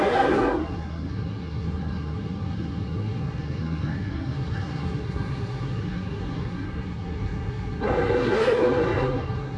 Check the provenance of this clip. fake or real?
fake